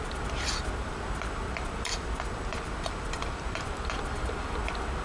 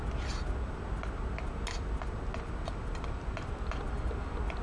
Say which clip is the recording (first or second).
second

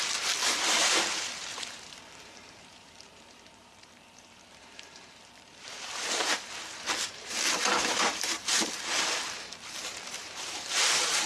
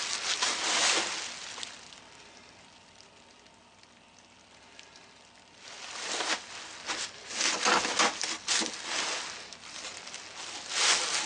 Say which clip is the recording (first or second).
second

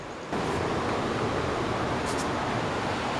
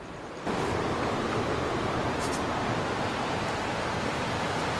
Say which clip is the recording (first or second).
first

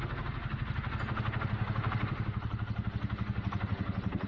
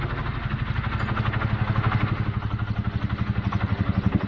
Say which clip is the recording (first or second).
second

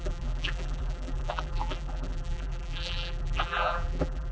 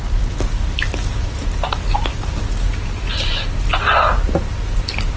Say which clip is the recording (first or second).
second